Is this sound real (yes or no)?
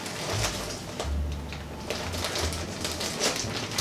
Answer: yes